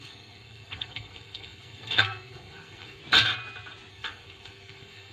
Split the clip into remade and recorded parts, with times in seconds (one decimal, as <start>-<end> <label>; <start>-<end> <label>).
0.0-3.0 remade; 3.0-3.9 recorded; 3.9-5.1 remade